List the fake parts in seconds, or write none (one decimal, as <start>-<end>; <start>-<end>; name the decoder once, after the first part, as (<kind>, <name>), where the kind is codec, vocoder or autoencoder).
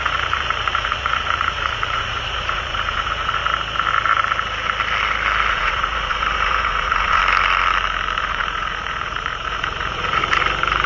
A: 0.0-3.4 (vocoder, Vocos); 5.5-7.2; 8.2-10.2